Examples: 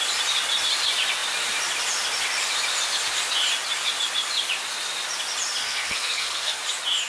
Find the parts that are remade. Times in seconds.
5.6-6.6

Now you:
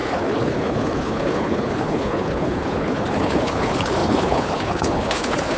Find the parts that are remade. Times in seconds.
0.0-5.6

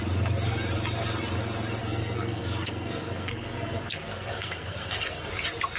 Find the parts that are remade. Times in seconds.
1.8-5.3

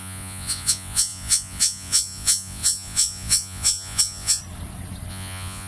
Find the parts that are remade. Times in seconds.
0.0-4.4; 5.1-5.7

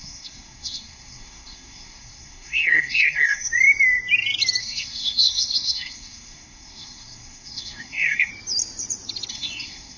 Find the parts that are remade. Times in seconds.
0.0-3.5; 4.6-8.3; 9.3-10.0

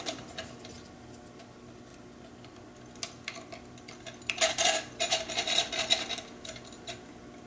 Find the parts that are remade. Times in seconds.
none